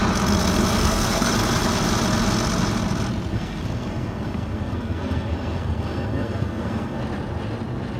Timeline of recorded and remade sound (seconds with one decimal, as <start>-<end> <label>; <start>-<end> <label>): 0.0-0.7 recorded; 0.7-1.3 remade; 1.3-3.3 recorded; 3.3-7.0 remade; 7.0-8.0 recorded